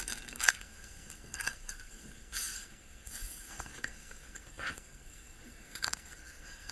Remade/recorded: remade